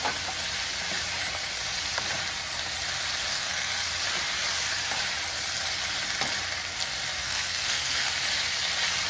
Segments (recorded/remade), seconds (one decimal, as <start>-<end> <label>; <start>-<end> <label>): 0.0-3.3 recorded; 3.3-3.9 remade; 3.9-7.2 recorded; 7.2-8.1 remade; 8.1-9.1 recorded